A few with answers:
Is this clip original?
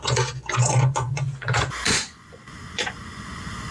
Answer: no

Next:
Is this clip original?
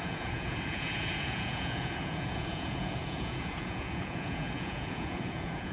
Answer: no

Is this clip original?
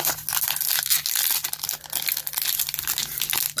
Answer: yes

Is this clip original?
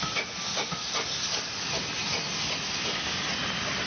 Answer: yes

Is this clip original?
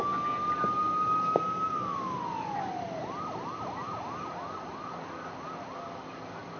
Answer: yes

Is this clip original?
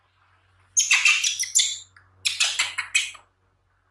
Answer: yes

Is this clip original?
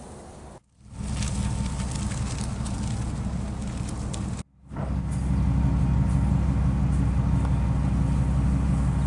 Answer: yes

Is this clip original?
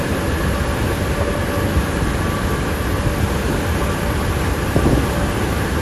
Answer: yes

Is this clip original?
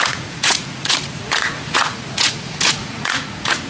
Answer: no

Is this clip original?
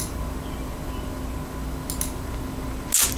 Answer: yes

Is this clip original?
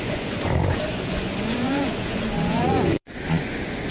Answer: no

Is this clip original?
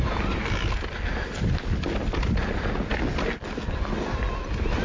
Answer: yes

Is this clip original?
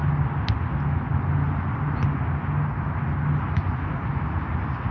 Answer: yes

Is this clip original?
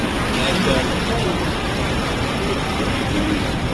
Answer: no